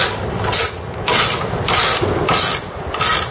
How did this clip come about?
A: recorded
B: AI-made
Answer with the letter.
A